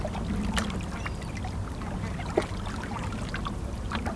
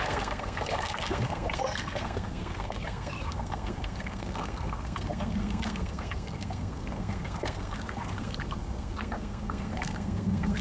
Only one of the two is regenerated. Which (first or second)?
second